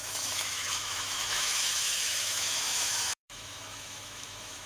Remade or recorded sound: remade